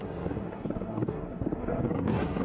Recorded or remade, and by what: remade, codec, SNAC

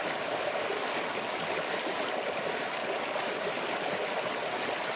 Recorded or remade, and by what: recorded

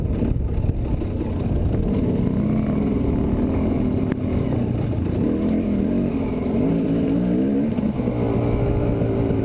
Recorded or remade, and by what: recorded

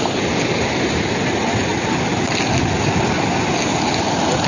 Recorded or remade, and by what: recorded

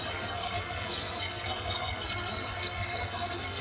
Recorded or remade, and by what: remade, codec, SNAC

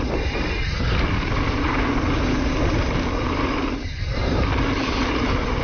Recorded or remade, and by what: recorded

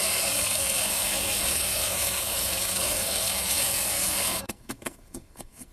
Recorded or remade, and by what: remade, codec, SNAC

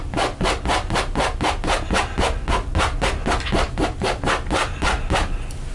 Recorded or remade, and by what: recorded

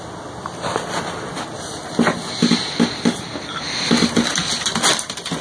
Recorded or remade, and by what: recorded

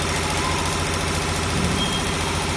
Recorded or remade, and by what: recorded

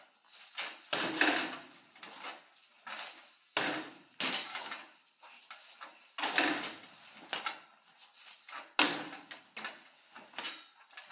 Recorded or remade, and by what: recorded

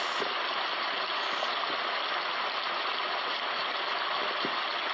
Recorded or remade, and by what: recorded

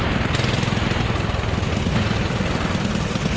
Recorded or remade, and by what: recorded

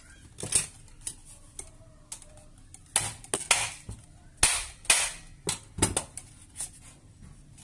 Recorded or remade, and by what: recorded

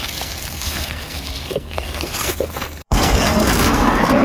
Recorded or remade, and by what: remade, codec, SNAC